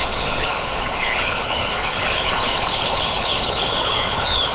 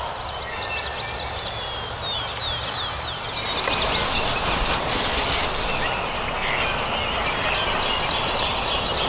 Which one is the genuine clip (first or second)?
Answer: second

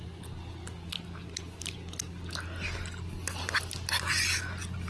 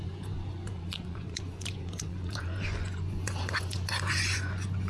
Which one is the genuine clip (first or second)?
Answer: first